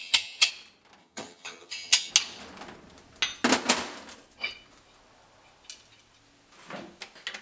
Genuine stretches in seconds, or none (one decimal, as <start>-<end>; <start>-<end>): 0.5-1.0; 2.1-7.4